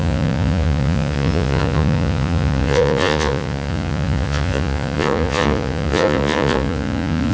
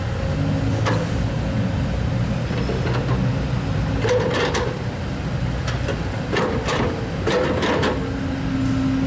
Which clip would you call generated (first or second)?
first